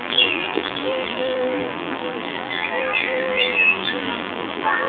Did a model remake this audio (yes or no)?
yes